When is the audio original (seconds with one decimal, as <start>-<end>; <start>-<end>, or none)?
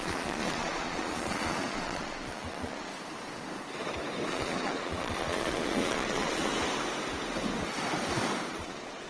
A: 2.9-4.3; 6.5-8.5